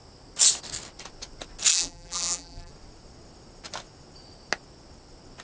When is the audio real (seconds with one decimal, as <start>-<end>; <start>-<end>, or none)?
0.0-1.7; 2.7-5.4